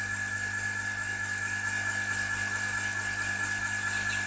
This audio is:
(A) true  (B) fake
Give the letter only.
A